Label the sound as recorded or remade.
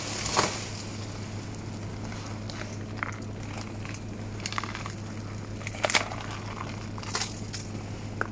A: recorded